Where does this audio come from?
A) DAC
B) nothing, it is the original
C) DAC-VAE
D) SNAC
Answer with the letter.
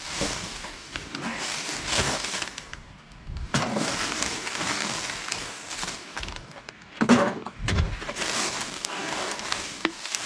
A